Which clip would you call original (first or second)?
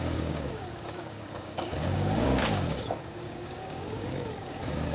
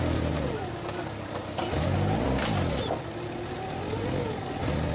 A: second